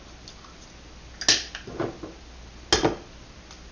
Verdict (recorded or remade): recorded